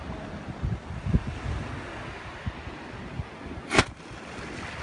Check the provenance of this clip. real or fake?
real